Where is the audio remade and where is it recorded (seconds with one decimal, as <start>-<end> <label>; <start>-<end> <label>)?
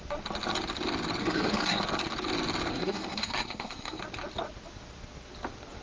0.0-1.2 recorded; 1.2-1.8 remade; 1.8-2.7 recorded; 2.7-4.0 remade; 4.0-5.8 recorded